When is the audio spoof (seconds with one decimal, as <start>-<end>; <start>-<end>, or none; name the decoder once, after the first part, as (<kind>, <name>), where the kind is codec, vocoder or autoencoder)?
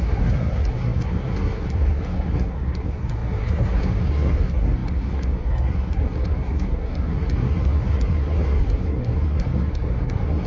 0.0-10.5 (codec, SNAC)